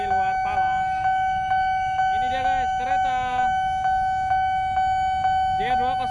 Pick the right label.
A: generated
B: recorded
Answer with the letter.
B